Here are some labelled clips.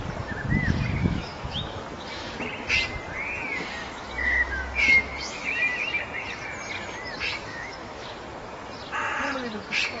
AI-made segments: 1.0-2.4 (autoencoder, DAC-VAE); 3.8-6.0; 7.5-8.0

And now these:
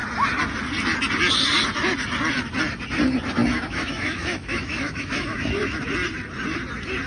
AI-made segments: 3.4-5.8 (autoencoder, DAC-VAE)

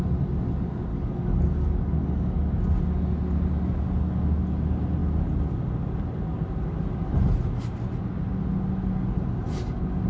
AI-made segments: 0.9-2.5 (codec, DAC)

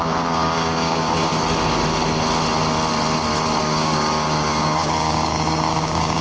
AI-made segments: 0.0-1.3 (codec, DAC); 3.6-6.2

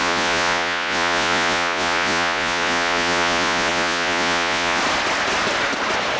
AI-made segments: 0.0-4.8 (vocoder, Vocos)

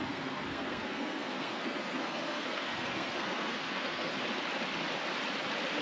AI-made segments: 0.0-4.1 (codec, SNAC)

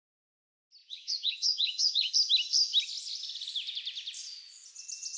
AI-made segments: 0.8-2.1 (vocoder, Vocos)

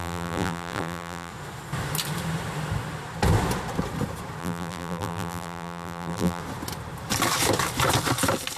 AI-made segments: 0.0-1.3 (vocoder, BigVGAN v2); 4.4-6.4